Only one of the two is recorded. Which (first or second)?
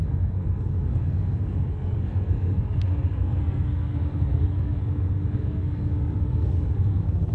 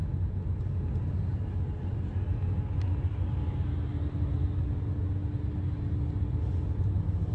second